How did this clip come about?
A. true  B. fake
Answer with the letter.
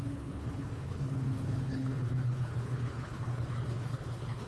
B